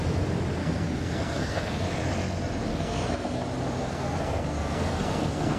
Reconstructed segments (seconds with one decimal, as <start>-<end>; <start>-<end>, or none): 0.6-1.8; 2.7-3.4; 3.8-5.6